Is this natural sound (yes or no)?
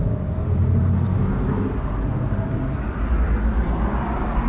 yes